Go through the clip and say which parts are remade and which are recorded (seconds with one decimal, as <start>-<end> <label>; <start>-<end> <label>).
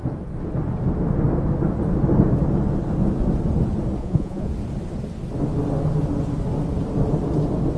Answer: 0.0-4.0 recorded; 4.0-4.5 remade; 4.5-7.8 recorded